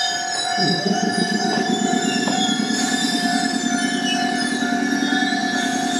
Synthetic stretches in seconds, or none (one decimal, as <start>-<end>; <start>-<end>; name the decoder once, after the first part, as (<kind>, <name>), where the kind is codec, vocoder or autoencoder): 0.6-3.7 (vocoder, BigVGAN v2); 5.4-6.0